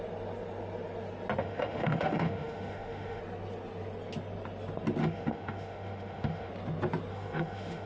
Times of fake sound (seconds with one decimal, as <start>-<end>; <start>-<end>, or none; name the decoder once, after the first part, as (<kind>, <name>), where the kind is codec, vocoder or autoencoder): 1.4-3.2 (autoencoder, DAC-VAE); 5.0-6.5; 7.1-7.9